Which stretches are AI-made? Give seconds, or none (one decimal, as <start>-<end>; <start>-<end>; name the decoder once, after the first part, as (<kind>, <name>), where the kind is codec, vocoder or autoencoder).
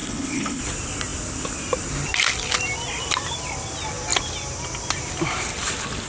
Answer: 0.0-0.6 (codec, HILCodec)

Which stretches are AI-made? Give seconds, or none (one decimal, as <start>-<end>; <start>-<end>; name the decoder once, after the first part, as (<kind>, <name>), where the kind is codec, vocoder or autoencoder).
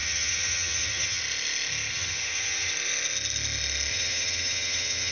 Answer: 0.0-1.2 (vocoder, HiFi-GAN); 1.9-2.7; 3.9-5.1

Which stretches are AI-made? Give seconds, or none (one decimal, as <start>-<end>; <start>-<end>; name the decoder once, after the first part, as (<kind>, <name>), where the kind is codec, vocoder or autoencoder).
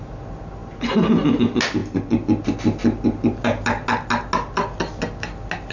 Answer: none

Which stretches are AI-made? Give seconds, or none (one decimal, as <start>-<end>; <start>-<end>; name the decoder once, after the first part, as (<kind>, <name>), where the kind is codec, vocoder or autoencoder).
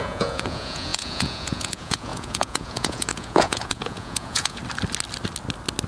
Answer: 0.0-4.6 (vocoder, Vocos)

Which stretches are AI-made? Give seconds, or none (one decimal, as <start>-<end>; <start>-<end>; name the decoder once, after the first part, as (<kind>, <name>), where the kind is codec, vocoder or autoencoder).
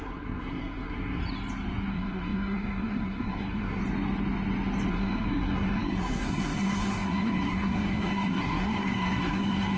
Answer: 0.0-1.2 (codec, SNAC); 1.9-3.8; 4.9-9.8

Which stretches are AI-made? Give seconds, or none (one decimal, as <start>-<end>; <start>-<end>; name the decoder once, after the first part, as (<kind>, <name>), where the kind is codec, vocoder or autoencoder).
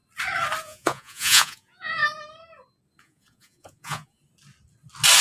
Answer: 0.6-2.0 (vocoder, Vocos); 3.0-4.2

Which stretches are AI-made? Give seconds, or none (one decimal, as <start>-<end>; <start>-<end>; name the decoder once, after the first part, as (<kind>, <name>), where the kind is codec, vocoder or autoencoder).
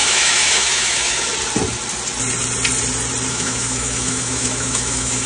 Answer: 0.0-1.3 (autoencoder, DAC-VAE); 3.3-5.3